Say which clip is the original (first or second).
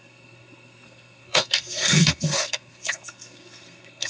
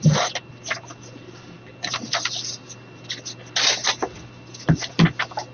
second